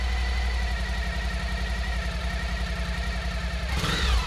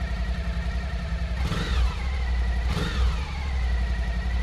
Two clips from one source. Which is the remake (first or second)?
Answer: second